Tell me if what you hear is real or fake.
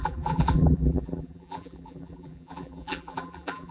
fake